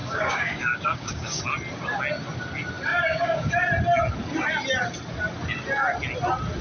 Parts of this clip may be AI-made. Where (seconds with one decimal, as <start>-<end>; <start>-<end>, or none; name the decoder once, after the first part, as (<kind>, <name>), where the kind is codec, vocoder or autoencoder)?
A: 0.0-1.4 (codec, DAC); 2.9-3.5